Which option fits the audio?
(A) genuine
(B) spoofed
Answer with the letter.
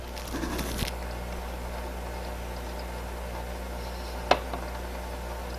A